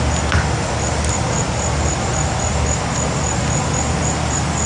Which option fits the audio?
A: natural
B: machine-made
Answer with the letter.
A